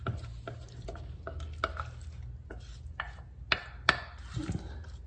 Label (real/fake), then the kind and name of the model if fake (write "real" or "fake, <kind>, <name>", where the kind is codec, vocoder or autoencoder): real